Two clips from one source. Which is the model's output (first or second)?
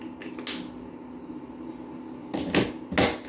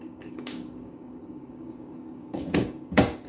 second